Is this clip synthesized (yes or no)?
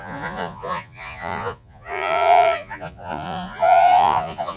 yes